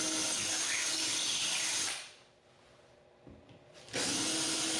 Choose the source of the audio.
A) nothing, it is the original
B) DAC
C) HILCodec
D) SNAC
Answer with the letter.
A